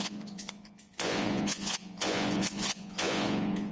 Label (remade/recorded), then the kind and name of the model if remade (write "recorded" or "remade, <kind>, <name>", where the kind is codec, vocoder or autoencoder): remade, vocoder, Vocos